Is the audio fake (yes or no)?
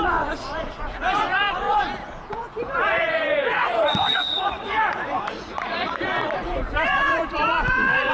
yes